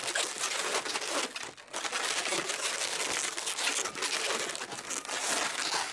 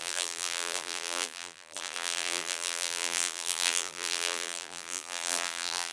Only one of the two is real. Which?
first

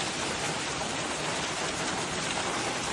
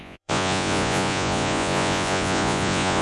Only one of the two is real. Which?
first